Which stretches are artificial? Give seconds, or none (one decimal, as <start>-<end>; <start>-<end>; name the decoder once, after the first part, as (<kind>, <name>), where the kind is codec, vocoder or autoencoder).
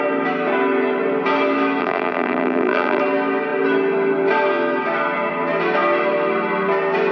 1.8-3.0 (vocoder, BigVGAN v2)